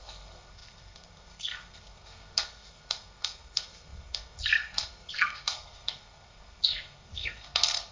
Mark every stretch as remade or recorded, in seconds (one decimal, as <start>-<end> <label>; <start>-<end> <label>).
0.0-7.9 remade